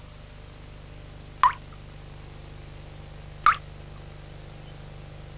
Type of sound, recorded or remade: recorded